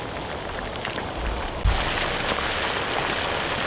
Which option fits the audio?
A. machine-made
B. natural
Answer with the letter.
B